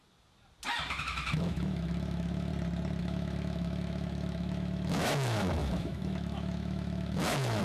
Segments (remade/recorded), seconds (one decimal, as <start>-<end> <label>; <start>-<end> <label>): 0.0-0.9 recorded; 0.9-2.5 remade; 2.5-3.0 recorded; 3.0-7.6 remade